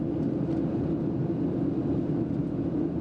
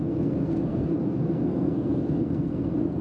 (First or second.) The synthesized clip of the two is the second